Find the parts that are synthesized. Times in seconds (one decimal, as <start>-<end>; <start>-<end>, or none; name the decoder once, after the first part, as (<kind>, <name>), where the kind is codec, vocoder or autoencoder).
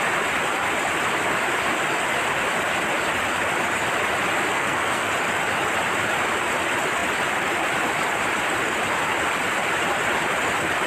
4.5-5.1 (codec, SNAC)